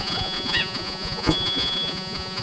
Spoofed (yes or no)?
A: yes